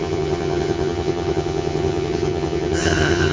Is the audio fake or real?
fake